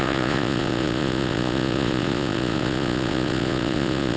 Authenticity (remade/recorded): remade